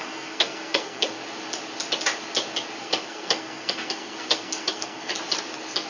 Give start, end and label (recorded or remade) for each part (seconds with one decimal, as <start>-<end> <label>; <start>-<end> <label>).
0.0-1.2 remade; 1.2-2.8 recorded; 2.8-5.1 remade; 5.1-5.9 recorded